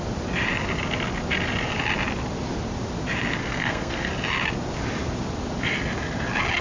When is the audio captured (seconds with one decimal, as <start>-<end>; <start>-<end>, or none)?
0.0-3.4; 4.1-6.6